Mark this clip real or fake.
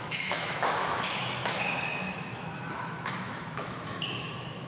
fake